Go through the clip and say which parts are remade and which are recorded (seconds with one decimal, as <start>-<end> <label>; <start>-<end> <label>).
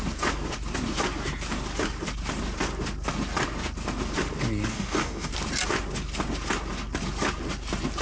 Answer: 0.0-4.7 recorded; 4.7-5.3 remade; 5.3-8.0 recorded